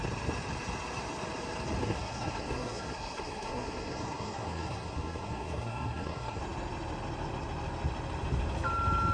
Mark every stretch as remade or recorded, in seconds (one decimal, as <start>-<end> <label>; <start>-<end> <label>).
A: 0.0-1.8 recorded; 1.8-6.4 remade; 6.4-9.1 recorded